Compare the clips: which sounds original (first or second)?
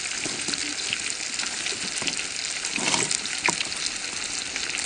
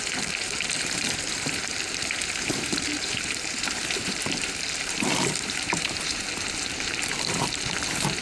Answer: first